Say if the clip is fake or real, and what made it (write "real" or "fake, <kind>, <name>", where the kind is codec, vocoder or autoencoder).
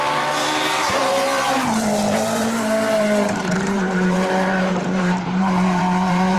fake, vocoder, BigVGAN v2